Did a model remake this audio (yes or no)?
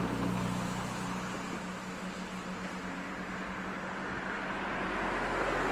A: no